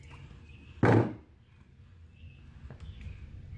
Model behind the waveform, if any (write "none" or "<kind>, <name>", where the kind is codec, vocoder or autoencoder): none